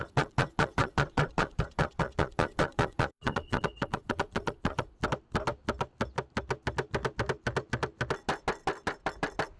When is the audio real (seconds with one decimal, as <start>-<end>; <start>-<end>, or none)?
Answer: 5.0-9.6